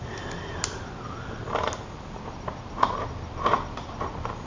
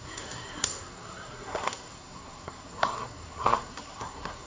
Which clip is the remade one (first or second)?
second